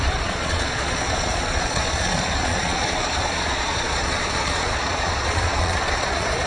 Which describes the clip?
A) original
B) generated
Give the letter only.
B